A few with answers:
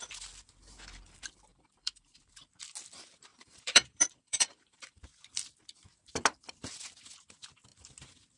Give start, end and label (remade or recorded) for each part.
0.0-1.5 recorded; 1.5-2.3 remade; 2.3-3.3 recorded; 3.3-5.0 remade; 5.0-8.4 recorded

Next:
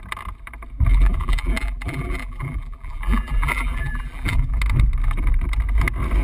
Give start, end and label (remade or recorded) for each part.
0.0-0.9 recorded; 0.9-4.6 remade; 4.6-6.2 recorded

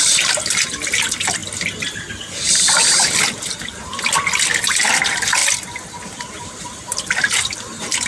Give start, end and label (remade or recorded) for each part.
0.0-1.4 remade; 1.4-3.1 recorded; 3.1-3.9 remade; 3.9-4.8 recorded; 4.8-5.4 remade; 5.4-6.3 recorded; 6.3-8.1 remade

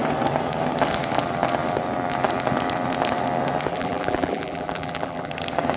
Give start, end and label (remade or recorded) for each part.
0.0-3.7 recorded; 3.7-5.3 remade; 5.3-5.8 recorded

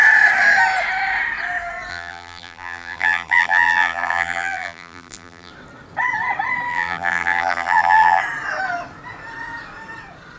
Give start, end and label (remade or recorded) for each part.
0.0-1.9 recorded; 1.9-5.5 remade; 5.5-6.7 recorded; 6.7-8.2 remade; 8.2-10.4 recorded

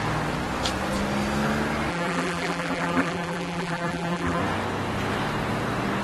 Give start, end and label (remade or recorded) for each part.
0.0-1.9 recorded; 1.9-4.4 remade; 4.4-6.0 recorded

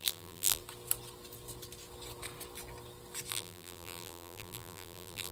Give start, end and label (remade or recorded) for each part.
0.0-0.6 remade; 0.6-3.3 recorded; 3.3-5.3 remade